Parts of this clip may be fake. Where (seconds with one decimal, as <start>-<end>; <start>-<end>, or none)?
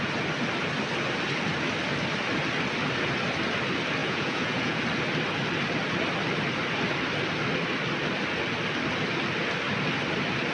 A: 4.0-4.8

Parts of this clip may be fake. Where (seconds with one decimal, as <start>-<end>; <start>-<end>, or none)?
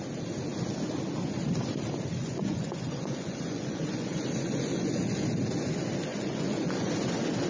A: 2.2-5.4; 6.1-6.9